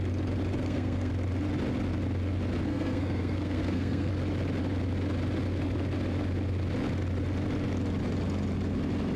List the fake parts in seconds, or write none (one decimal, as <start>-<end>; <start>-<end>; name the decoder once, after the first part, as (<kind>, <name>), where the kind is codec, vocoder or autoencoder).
0.6-1.1 (codec, SNAC); 2.7-4.1